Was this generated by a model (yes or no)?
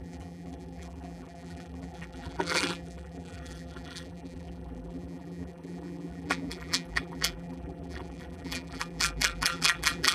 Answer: yes